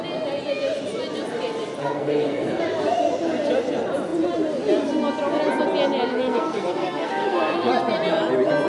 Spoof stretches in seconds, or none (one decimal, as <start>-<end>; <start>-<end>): 1.8-2.6; 6.1-7.7